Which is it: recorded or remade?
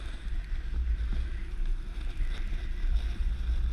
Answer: recorded